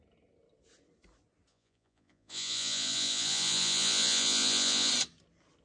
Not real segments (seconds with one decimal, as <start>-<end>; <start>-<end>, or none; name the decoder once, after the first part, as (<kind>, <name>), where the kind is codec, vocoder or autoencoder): 1.5-4.9 (vocoder, Vocos)